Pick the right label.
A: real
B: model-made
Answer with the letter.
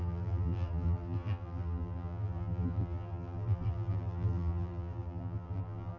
B